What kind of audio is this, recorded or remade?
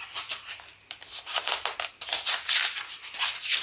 recorded